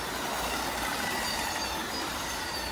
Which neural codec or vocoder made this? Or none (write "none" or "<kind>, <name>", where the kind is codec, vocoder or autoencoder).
none